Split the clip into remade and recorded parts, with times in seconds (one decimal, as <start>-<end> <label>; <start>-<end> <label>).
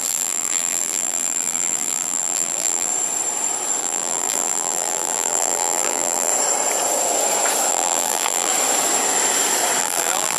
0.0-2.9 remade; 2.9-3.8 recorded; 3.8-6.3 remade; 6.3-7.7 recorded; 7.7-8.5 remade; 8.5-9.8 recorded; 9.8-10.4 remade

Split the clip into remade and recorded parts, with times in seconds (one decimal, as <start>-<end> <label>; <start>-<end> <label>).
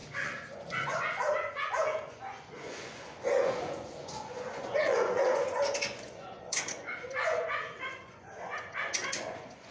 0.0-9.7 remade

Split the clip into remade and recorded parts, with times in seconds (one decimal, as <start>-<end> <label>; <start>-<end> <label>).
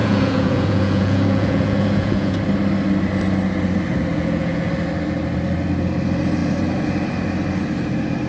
0.0-2.4 remade; 2.4-4.1 recorded; 4.1-4.7 remade; 4.7-8.3 recorded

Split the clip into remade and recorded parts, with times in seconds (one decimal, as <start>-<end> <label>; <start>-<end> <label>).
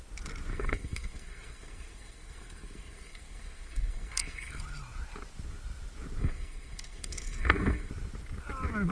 0.0-0.5 recorded; 0.5-4.6 remade; 4.6-6.2 recorded; 6.2-7.9 remade; 7.9-8.9 recorded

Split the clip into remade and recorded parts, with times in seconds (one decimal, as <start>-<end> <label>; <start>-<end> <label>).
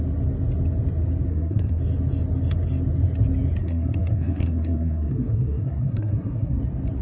0.0-1.3 recorded; 1.3-1.8 remade; 1.8-3.6 recorded; 3.6-6.6 remade; 6.6-7.0 recorded